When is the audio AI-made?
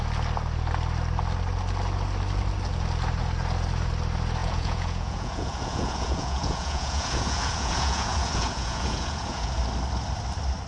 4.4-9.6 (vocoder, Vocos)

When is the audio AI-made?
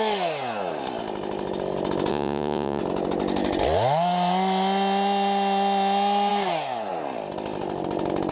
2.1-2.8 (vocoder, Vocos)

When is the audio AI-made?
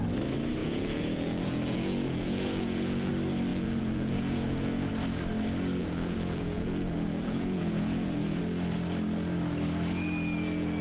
0.6-3.1 (vocoder, Vocos); 3.5-4.9; 5.8-8.4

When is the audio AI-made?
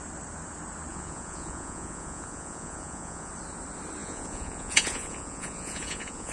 0.9-3.3 (vocoder, Vocos); 4.0-6.3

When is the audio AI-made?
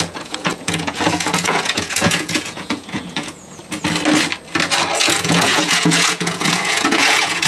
0.0-3.6 (vocoder, Vocos); 5.0-7.5